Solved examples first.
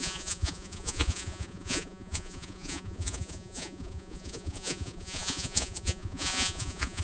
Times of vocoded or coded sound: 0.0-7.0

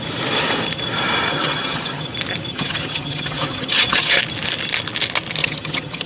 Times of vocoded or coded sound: 1.3-2.1; 2.5-4.2; 5.4-6.1

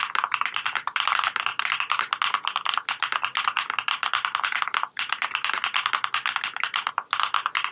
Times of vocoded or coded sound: none

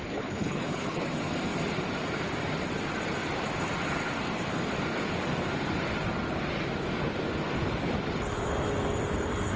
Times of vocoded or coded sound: 0.0-1.1

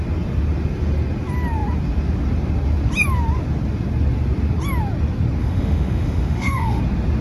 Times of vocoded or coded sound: 5.4-6.8

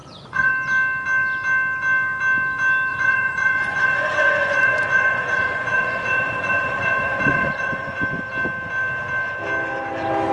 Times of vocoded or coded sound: 0.0-0.5; 2.9-8.0

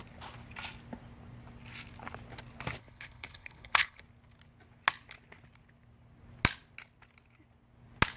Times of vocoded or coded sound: 2.8-4.0

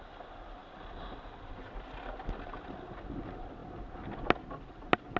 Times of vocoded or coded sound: none